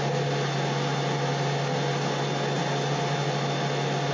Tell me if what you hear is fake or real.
real